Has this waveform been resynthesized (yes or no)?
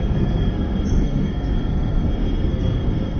yes